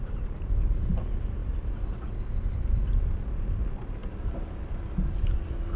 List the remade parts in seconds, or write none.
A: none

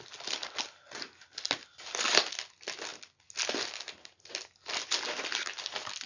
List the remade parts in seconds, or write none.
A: none